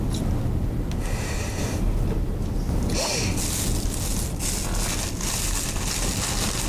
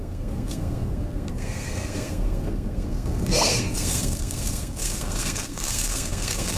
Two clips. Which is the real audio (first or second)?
first